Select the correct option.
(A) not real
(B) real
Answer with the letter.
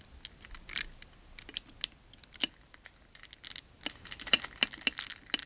B